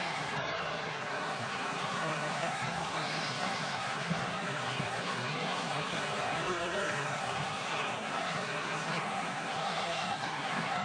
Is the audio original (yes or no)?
no